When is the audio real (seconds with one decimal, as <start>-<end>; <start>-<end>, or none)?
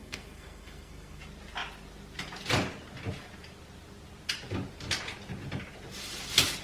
1.2-6.6